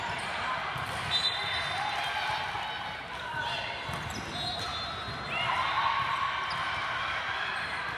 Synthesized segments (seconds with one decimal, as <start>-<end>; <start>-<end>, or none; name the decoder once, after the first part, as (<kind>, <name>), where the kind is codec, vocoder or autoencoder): none